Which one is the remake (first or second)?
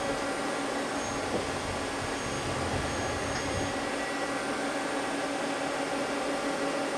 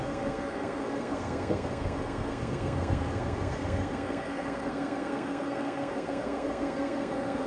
second